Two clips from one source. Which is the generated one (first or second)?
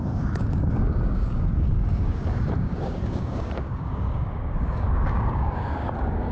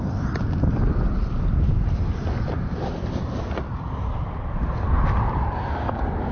first